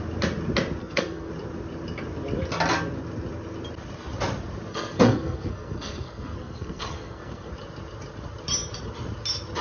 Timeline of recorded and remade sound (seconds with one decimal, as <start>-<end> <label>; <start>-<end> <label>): 0.0-0.8 recorded; 0.8-1.3 remade; 1.3-4.7 recorded; 4.7-7.5 remade; 7.5-9.6 recorded